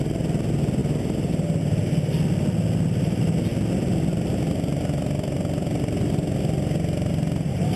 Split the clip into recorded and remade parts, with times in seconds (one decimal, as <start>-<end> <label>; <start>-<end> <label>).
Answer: 0.0-7.8 recorded